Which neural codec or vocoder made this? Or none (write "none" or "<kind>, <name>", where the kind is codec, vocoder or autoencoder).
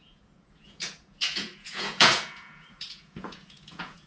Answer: vocoder, Vocos